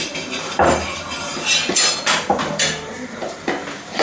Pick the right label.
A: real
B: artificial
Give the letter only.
B